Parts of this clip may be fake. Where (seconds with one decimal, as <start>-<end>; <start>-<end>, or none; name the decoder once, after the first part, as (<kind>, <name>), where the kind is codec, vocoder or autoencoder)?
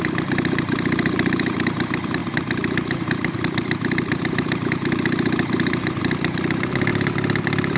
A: 0.0-6.9 (vocoder, BigVGAN v2)